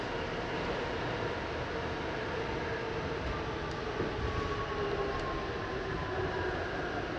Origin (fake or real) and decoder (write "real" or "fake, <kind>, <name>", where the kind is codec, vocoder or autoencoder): real